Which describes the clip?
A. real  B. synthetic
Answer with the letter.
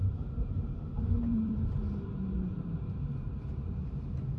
B